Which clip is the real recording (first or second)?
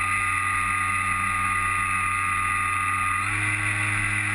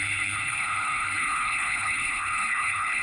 first